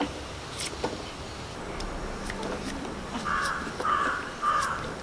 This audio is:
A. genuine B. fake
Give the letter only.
B